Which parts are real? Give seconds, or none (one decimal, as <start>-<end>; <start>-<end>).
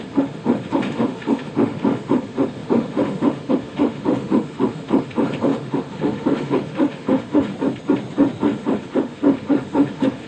7.5-8.4